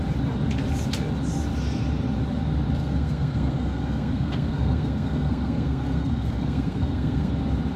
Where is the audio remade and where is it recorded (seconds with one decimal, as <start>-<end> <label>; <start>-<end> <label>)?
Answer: 0.0-2.8 recorded; 2.8-7.3 remade; 7.3-7.8 recorded